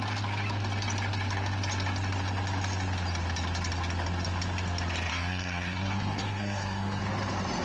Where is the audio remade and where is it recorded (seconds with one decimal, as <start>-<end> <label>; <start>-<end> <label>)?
0.0-5.1 recorded; 5.1-7.0 remade; 7.0-7.6 recorded